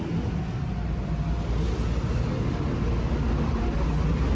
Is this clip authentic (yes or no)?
yes